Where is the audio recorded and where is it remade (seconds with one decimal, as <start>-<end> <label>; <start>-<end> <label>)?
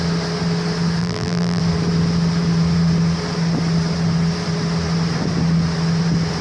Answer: 0.0-1.0 recorded; 1.0-1.6 remade; 1.6-6.4 recorded